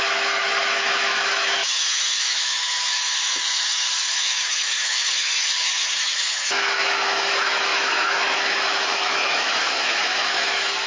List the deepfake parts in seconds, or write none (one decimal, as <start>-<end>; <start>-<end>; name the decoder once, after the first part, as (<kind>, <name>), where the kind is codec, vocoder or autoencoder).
0.0-10.9 (autoencoder, DAC-VAE)